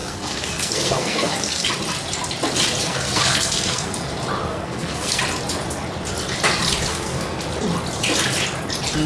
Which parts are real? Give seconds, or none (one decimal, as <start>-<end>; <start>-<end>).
1.7-2.8; 4.1-4.5; 5.2-6.9; 7.4-9.1